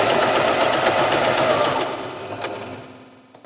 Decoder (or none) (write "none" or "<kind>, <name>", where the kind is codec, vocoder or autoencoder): none